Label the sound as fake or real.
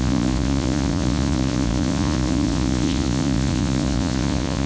fake